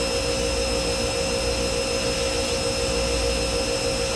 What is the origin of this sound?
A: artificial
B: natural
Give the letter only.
B